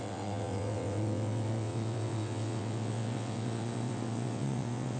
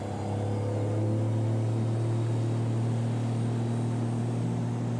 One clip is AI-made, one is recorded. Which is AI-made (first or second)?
first